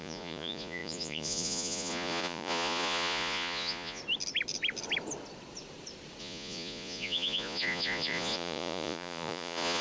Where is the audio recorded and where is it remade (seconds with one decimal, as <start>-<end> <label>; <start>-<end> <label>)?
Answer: 0.0-4.0 remade; 4.0-6.2 recorded; 6.2-9.8 remade